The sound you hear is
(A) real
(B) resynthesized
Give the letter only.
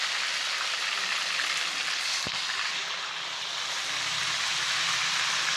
A